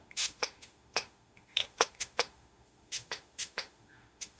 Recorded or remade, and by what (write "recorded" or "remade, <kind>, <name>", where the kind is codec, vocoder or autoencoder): remade, autoencoder, DAC-VAE